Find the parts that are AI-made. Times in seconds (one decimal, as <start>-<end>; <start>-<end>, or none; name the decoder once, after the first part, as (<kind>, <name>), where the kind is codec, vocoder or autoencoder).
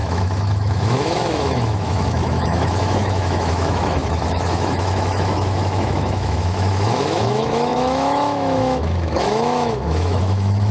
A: 0.0-10.7 (autoencoder, DAC-VAE)